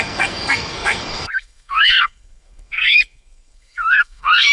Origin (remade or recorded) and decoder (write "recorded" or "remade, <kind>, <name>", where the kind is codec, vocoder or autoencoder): remade, codec, SNAC